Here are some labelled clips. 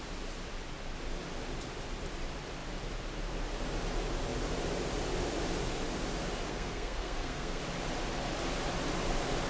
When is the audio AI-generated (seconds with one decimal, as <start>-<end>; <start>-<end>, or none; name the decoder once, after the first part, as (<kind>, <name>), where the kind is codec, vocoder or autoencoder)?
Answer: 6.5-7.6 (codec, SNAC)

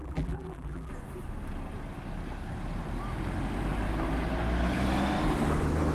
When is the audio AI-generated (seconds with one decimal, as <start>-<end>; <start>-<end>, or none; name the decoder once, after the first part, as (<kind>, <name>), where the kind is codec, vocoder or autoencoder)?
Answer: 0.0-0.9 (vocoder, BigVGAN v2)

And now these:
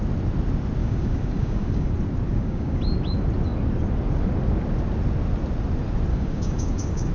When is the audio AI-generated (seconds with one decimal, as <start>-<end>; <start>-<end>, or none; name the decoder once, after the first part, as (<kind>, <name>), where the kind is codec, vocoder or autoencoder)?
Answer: 0.8-1.9 (codec, DAC); 2.3-2.8; 6.1-7.1